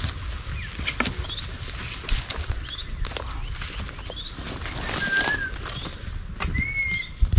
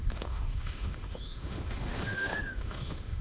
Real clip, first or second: first